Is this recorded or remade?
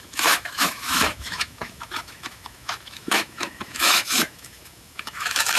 remade